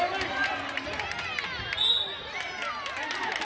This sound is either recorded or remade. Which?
recorded